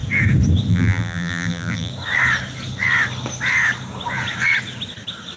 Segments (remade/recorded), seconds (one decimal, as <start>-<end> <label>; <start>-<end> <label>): 0.0-0.7 recorded; 0.7-1.9 remade; 1.9-5.4 recorded